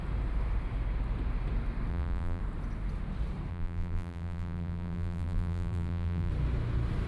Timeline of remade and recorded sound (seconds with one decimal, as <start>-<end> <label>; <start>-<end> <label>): 0.0-1.9 recorded; 1.9-2.4 remade; 2.4-3.5 recorded; 3.5-6.3 remade; 6.3-7.1 recorded